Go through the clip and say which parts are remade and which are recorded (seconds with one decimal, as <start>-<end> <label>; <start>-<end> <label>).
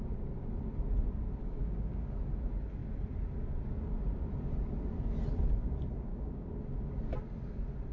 0.0-1.4 recorded; 1.4-2.2 remade; 2.2-6.1 recorded; 6.1-6.9 remade; 6.9-7.9 recorded